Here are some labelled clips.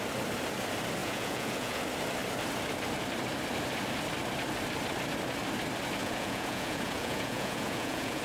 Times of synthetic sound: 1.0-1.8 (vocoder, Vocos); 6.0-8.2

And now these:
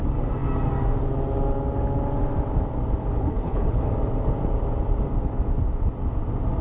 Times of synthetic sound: 3.2-3.8 (codec, HILCodec)

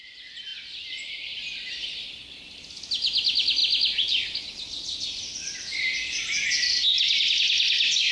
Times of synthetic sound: none